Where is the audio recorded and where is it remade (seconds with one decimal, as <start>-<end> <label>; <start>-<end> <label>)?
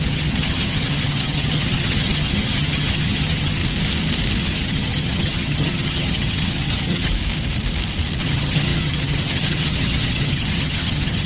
0.0-3.6 remade; 3.6-4.4 recorded; 4.4-7.1 remade; 7.1-8.2 recorded; 8.2-11.3 remade